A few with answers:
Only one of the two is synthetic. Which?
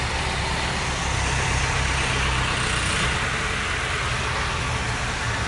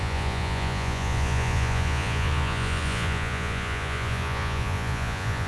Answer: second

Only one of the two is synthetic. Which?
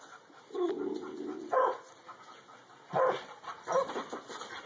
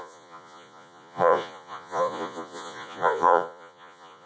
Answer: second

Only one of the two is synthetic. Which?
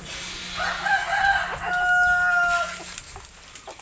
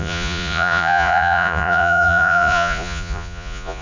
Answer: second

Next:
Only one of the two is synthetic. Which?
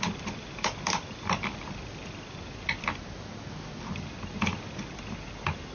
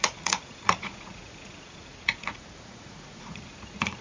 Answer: second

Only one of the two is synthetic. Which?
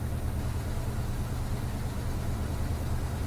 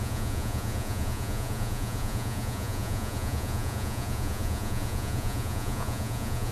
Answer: second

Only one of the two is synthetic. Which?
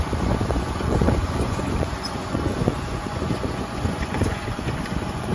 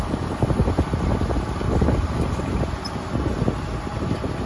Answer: first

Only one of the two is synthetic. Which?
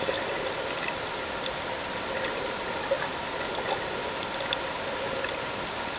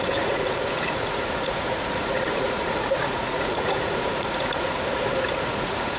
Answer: second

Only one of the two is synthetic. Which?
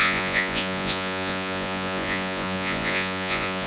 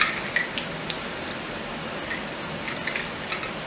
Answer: first